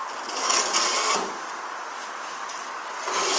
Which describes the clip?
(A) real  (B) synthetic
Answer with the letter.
A